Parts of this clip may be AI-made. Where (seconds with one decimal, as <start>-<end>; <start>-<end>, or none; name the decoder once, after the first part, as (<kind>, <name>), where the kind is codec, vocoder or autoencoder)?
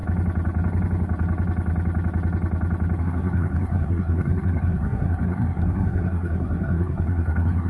3.0-7.7 (codec, SNAC)